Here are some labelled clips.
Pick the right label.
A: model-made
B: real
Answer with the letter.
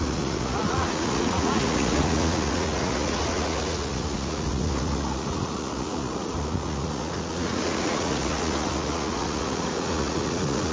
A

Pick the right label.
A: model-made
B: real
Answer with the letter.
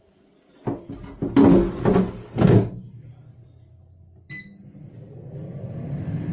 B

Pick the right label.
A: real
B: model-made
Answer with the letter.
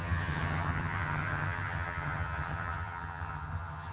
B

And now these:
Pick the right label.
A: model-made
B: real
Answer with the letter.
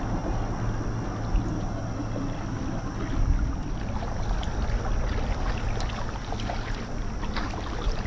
B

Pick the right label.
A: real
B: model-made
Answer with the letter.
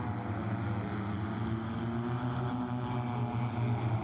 A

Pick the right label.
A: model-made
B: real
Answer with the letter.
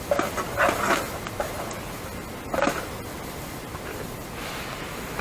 B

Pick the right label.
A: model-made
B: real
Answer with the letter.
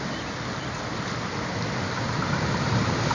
B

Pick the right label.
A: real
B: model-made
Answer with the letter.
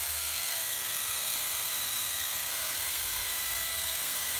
B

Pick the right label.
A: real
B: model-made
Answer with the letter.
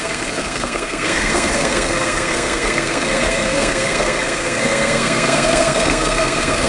B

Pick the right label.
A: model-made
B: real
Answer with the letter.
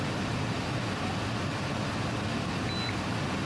B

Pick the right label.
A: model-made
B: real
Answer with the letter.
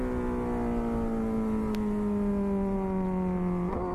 B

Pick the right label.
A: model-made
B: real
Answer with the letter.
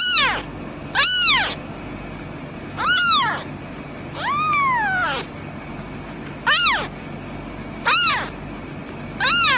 B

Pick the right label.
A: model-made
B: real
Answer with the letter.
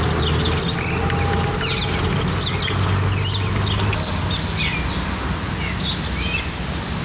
B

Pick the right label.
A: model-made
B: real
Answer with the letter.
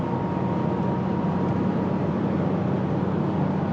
B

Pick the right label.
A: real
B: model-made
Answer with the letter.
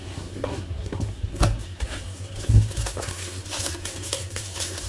B